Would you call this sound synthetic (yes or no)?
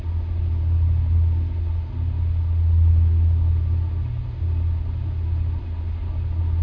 no